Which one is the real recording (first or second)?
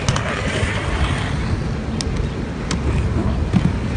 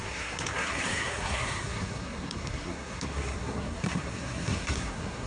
first